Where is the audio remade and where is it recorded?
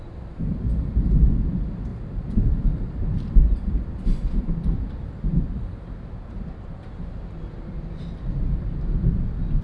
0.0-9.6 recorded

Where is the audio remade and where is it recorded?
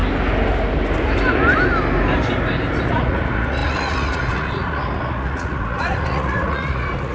0.0-2.8 recorded; 2.8-7.1 remade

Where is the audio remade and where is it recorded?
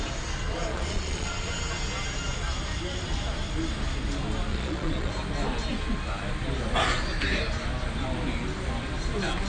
0.0-0.7 recorded; 0.7-1.5 remade; 1.5-4.5 recorded; 4.5-5.1 remade; 5.1-9.5 recorded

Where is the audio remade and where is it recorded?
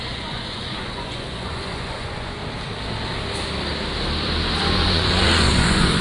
0.0-2.4 remade; 2.4-4.7 recorded; 4.7-6.0 remade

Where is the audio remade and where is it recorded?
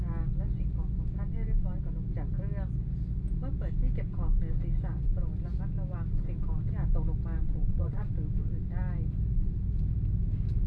0.0-7.4 recorded; 7.4-8.1 remade; 8.1-10.7 recorded